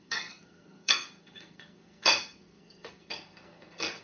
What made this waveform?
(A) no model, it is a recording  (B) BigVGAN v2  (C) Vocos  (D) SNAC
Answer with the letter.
D